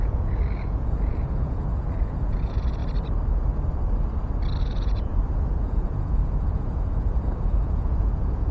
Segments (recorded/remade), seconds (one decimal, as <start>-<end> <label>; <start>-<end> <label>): 0.0-2.8 remade; 2.8-4.6 recorded; 4.6-5.1 remade; 5.1-5.6 recorded; 5.6-8.5 remade